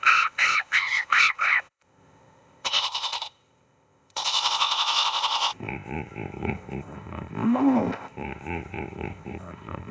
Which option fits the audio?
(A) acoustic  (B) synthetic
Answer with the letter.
B